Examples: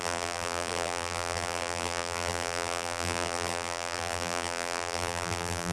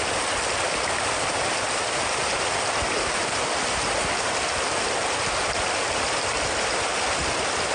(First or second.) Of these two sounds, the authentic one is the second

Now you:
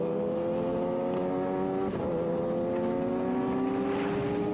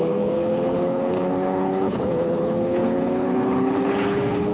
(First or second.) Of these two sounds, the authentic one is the first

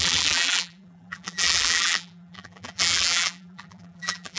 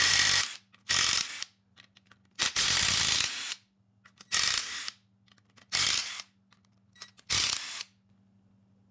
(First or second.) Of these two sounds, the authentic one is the second